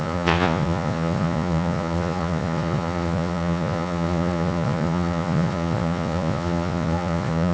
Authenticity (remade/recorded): remade